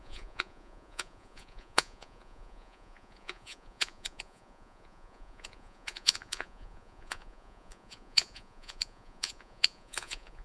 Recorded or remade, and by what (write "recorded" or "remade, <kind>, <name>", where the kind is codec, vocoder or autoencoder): remade, vocoder, Vocos